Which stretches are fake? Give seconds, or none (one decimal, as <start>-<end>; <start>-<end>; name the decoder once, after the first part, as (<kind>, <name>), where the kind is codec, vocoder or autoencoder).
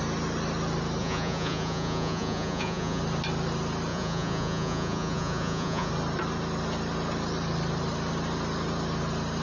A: 1.0-3.0 (vocoder, Vocos); 3.9-5.9